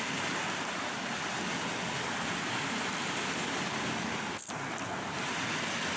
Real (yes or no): yes